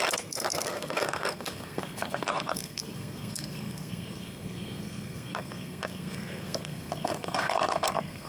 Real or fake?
fake